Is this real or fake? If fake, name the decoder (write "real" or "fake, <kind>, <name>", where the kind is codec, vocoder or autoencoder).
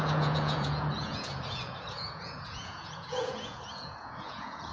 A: fake, vocoder, Vocos